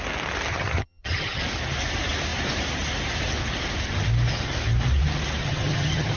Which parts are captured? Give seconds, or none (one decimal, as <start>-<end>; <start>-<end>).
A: 0.0-0.5; 1.4-5.4

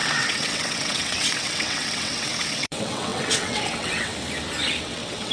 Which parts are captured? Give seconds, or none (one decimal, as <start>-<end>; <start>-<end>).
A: 4.1-4.8

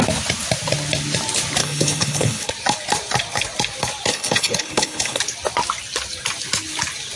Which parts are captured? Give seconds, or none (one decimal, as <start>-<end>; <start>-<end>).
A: 0.0-1.6; 2.5-4.1; 5.2-7.2

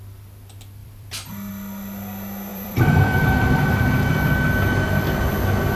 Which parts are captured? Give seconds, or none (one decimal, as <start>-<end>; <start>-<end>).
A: 0.0-0.8; 1.5-2.5; 4.1-5.8

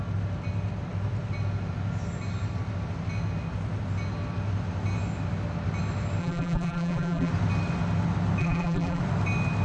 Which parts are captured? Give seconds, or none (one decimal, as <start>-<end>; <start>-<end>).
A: 0.0-6.2; 7.3-8.4; 9.0-9.6

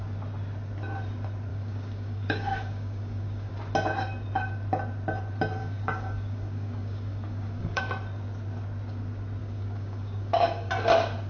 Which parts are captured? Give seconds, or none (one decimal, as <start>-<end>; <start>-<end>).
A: 0.0-1.5; 3.5-5.6; 7.8-9.4; 10.7-11.3

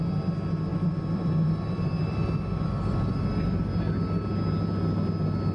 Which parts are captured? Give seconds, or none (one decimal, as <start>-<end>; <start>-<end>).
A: 0.0-0.7; 3.6-5.5